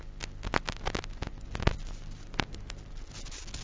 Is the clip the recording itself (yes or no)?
yes